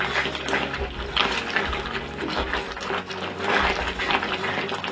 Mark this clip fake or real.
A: real